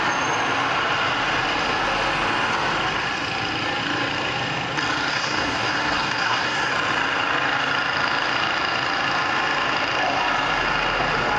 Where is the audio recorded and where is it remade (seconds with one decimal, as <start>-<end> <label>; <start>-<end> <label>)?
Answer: 0.0-5.1 recorded; 5.1-6.7 remade; 6.7-11.4 recorded